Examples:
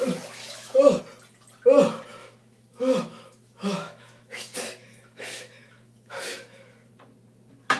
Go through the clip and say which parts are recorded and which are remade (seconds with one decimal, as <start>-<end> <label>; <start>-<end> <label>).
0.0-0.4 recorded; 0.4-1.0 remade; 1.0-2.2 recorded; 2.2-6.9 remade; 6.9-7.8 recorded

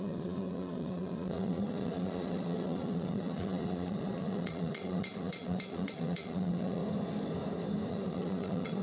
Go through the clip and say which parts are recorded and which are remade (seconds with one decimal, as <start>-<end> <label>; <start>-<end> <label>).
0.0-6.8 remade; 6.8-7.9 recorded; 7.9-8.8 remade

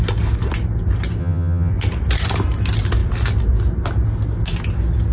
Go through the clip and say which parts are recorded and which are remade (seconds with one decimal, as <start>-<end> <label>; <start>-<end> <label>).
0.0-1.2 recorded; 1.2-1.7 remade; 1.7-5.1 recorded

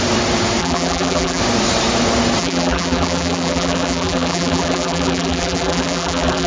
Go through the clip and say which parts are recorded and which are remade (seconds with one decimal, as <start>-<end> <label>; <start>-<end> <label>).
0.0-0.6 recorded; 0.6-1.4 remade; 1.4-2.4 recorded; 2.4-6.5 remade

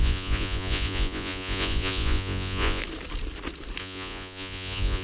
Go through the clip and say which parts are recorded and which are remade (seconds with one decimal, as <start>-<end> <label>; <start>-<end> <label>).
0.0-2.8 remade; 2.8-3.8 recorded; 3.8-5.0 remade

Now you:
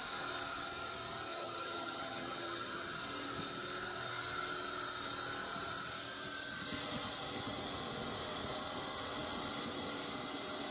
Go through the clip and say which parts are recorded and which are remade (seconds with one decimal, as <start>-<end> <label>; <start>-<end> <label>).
0.0-1.3 recorded; 1.3-3.0 remade; 3.0-10.7 recorded

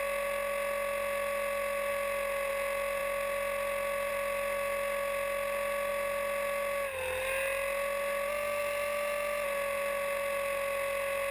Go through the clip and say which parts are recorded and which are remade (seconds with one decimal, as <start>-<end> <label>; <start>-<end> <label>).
0.0-11.3 recorded